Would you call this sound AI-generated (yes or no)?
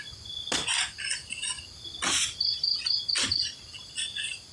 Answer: no